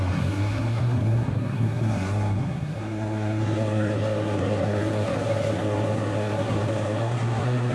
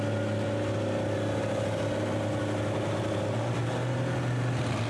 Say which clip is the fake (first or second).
first